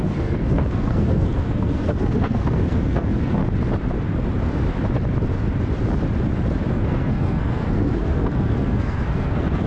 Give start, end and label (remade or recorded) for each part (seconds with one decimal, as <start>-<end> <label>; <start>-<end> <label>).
0.0-3.4 remade; 3.4-6.7 recorded; 6.7-9.7 remade

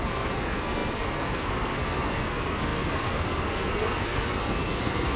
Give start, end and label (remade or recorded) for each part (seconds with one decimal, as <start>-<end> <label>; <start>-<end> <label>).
0.0-5.2 remade

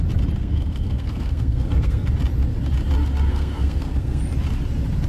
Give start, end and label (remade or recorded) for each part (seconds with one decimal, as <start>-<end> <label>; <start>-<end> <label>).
0.0-0.4 recorded; 0.4-2.1 remade; 2.1-3.3 recorded; 3.3-4.2 remade; 4.2-5.1 recorded

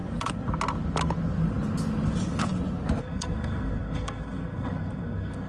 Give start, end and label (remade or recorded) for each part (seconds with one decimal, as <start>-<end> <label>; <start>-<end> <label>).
0.0-3.0 recorded; 3.0-5.5 remade

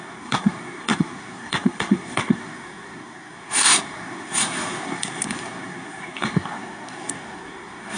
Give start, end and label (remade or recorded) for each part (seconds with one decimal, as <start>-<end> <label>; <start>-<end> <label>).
0.0-8.0 remade